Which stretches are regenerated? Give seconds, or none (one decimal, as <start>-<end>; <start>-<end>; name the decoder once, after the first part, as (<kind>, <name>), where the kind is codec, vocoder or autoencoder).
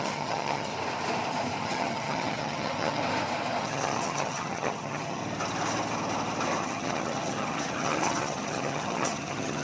0.0-0.7 (vocoder, HiFi-GAN); 1.6-3.0; 3.6-5.2; 6.6-9.6